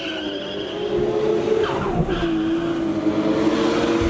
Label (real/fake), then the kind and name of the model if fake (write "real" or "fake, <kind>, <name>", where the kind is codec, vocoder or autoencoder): real